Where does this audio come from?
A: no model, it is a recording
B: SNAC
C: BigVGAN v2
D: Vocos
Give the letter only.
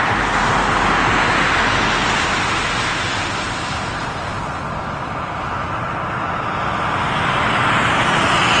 A